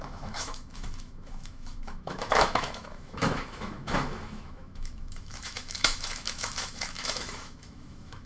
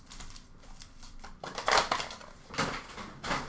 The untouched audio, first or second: second